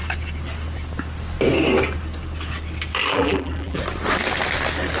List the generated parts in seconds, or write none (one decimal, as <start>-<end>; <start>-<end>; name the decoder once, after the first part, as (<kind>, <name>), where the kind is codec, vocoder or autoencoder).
3.1-3.8 (vocoder, BigVGAN v2)